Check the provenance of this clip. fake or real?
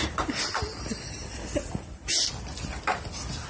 real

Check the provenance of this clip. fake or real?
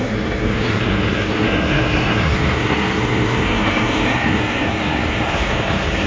fake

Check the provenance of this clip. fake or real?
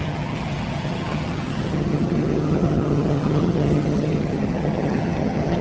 fake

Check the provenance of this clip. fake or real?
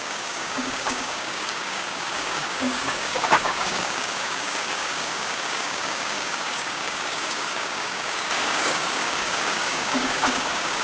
fake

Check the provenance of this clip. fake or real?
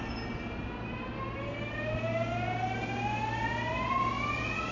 real